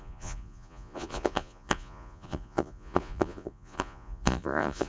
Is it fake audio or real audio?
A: fake